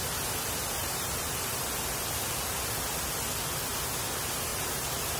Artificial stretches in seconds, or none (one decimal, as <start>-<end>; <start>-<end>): 0.8-1.6; 4.5-5.2

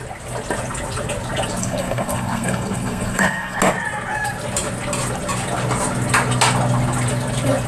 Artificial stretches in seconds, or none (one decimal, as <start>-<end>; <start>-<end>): 1.6-3.6

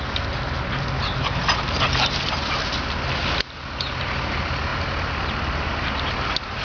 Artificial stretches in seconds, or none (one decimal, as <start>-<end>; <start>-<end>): none

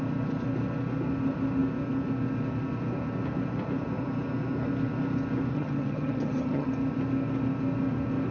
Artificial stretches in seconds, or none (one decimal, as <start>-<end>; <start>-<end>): 5.5-6.7

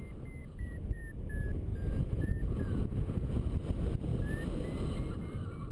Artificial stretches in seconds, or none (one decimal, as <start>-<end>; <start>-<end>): 0.4-1.0; 1.7-3.3